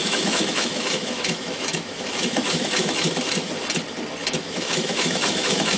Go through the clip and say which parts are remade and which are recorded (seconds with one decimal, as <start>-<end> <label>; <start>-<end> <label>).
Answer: 0.0-3.5 remade; 3.5-4.2 recorded; 4.2-5.8 remade